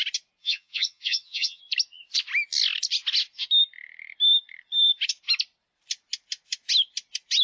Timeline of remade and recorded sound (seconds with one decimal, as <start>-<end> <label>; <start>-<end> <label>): 0.0-0.4 recorded; 0.4-1.6 remade; 1.6-7.4 recorded